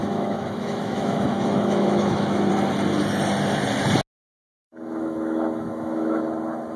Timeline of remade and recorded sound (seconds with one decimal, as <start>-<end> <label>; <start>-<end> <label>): 0.0-2.5 remade; 2.5-4.6 recorded; 4.6-6.2 remade; 6.2-6.8 recorded